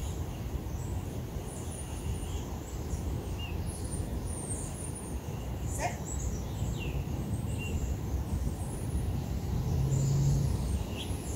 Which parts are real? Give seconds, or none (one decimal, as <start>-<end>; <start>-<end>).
0.0-11.4